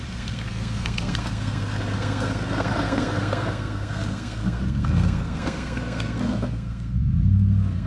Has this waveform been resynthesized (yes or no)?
yes